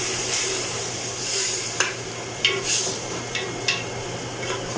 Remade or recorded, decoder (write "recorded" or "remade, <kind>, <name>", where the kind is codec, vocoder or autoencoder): remade, vocoder, BigVGAN v2